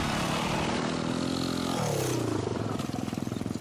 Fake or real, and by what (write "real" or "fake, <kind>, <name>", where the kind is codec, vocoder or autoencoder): real